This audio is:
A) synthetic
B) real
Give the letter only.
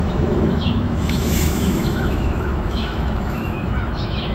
A